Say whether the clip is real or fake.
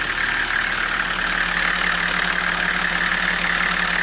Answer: real